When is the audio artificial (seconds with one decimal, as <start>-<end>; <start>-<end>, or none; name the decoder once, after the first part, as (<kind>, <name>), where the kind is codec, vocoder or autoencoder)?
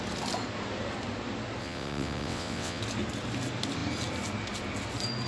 1.6-2.8 (vocoder, WaveNeXt)